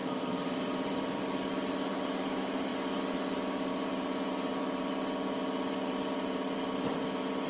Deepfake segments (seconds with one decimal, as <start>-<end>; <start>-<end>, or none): 0.0-1.2